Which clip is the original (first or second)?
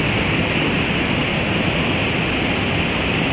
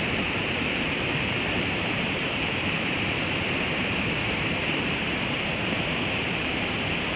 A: first